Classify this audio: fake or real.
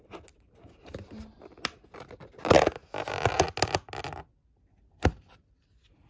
real